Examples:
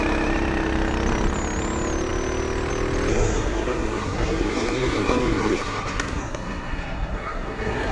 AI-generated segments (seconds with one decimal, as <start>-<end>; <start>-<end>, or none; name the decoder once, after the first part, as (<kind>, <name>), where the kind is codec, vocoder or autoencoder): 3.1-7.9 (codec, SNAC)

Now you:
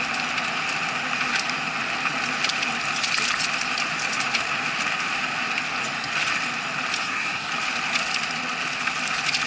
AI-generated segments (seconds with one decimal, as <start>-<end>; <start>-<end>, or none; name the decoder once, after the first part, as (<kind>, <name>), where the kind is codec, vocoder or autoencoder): 7.0-7.5 (codec, SNAC)

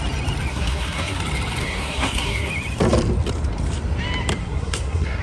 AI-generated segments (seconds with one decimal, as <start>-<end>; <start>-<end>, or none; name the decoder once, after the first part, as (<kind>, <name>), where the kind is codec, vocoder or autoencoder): 0.5-1.2 (codec, SNAC); 1.6-2.5; 4.4-5.2

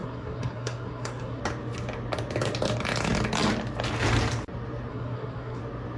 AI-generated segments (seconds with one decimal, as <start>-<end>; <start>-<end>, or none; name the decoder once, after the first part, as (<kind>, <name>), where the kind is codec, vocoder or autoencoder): 0.0-1.4 (codec, SNAC); 4.9-5.6

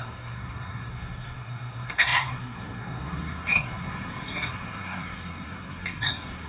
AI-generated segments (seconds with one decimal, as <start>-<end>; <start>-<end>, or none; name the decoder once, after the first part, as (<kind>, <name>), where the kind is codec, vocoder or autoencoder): 0.0-6.5 (codec, SNAC)